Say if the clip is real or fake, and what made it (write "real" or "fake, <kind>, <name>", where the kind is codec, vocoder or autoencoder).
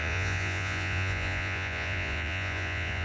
fake, vocoder, Vocos